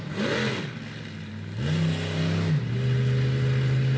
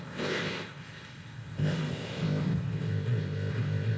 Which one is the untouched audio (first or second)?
first